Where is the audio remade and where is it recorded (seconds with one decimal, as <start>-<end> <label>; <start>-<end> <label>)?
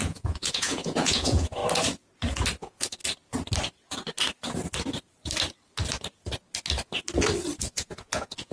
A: 0.0-1.6 remade; 1.6-2.6 recorded; 2.6-3.0 remade; 3.0-7.6 recorded; 7.6-8.5 remade